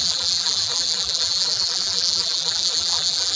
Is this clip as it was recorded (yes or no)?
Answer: no